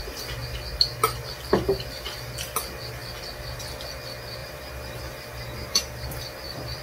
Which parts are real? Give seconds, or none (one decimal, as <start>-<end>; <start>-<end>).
0.0-4.4; 5.0-5.6